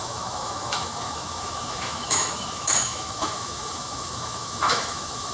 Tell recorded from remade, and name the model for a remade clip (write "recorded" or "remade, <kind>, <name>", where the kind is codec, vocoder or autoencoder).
remade, autoencoder, DAC-VAE